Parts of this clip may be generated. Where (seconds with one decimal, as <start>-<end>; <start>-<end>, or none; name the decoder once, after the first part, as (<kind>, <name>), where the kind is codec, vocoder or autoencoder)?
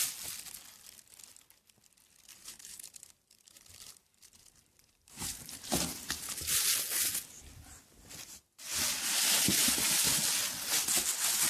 2.3-6.8 (vocoder, BigVGAN v2); 8.7-9.7